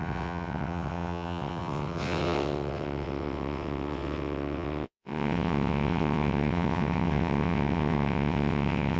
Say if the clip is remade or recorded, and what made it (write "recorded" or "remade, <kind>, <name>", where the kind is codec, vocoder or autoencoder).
remade, vocoder, WaveNeXt